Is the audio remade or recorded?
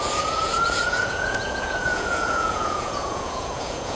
remade